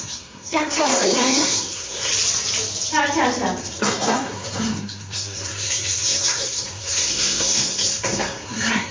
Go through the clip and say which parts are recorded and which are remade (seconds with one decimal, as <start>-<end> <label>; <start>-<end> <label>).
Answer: 0.0-2.1 remade; 2.1-3.6 recorded; 3.6-8.9 remade